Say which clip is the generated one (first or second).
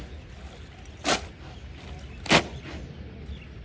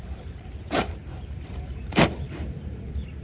second